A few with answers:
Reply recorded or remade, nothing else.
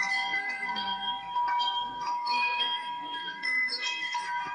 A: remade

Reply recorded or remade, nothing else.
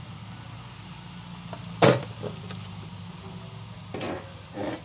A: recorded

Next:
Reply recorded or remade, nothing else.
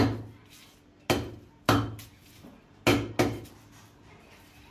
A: recorded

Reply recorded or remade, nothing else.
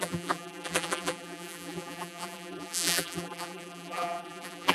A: remade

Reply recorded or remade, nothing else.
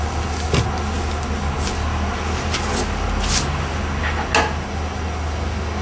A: recorded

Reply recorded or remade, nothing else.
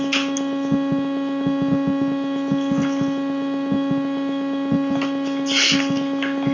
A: recorded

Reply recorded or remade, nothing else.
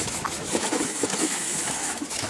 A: remade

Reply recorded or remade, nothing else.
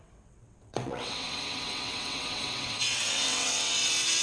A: remade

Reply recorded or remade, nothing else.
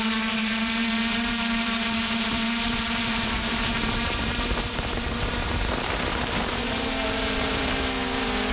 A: remade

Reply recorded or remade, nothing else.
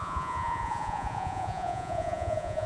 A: remade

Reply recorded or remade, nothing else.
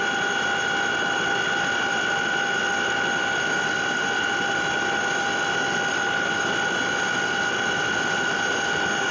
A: recorded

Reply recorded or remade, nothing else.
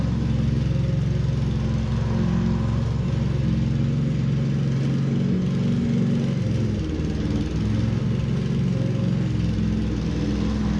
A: recorded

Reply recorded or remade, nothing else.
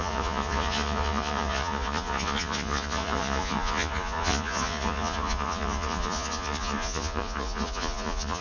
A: remade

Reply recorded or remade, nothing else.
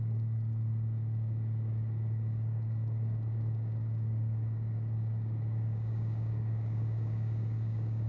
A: remade